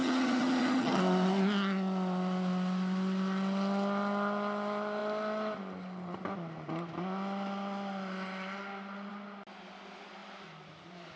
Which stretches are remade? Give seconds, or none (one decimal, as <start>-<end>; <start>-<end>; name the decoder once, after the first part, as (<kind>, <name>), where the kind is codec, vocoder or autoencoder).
0.0-1.0 (vocoder, HiFi-GAN)